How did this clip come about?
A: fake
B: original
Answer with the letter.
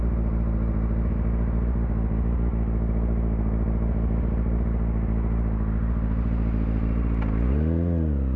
B